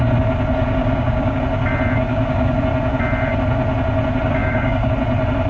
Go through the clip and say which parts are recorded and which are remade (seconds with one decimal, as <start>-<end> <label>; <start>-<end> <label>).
0.0-0.8 recorded; 0.8-1.4 remade; 1.4-2.1 recorded; 2.1-2.6 remade; 2.6-4.4 recorded; 4.4-4.9 remade; 4.9-5.5 recorded